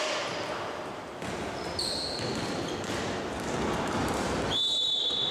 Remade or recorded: recorded